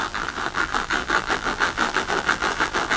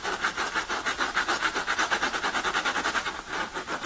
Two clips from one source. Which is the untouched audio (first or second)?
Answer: second